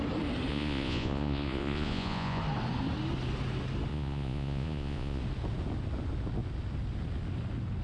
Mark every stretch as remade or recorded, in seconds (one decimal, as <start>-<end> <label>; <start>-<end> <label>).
0.0-0.5 recorded; 0.5-2.4 remade; 2.4-3.9 recorded; 3.9-5.2 remade; 5.2-7.8 recorded